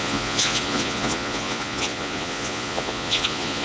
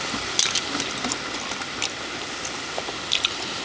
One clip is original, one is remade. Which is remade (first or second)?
first